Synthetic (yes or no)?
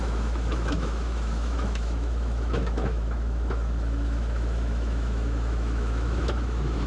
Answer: yes